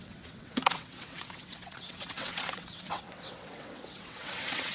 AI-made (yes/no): yes